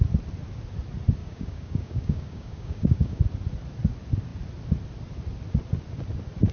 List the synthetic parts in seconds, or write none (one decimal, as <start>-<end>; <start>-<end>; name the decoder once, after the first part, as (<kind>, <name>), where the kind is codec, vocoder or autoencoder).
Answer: 1.2-3.2 (codec, DAC)